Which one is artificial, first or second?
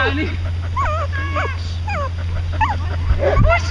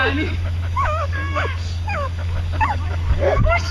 second